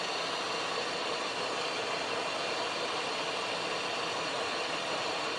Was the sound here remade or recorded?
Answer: recorded